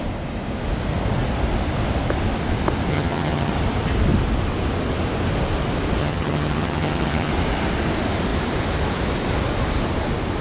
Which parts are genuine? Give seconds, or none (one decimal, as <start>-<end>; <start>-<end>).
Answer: 0.0-2.9; 3.5-6.0; 7.3-10.4